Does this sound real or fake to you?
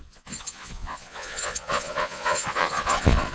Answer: fake